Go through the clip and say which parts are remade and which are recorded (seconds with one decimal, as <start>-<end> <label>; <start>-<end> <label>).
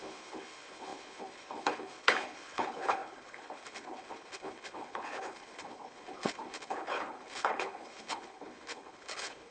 0.0-9.5 remade